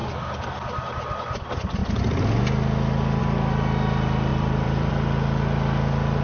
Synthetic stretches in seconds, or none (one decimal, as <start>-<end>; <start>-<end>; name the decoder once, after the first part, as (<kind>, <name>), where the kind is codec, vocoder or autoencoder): 0.0-0.5 (vocoder, BigVGAN v2); 4.3-4.9